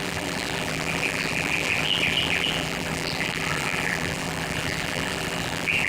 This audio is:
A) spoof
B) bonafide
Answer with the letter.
A